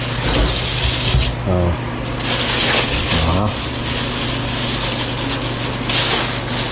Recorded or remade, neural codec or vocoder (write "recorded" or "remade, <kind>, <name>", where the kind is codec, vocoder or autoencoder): recorded